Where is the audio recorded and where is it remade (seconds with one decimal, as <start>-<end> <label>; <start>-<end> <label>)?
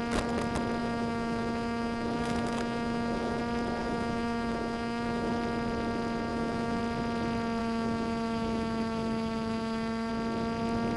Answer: 0.0-0.8 recorded; 0.8-3.4 remade; 3.4-3.8 recorded; 3.8-5.3 remade; 5.3-6.3 recorded; 6.3-6.8 remade; 6.8-7.6 recorded; 7.6-10.1 remade; 10.1-11.0 recorded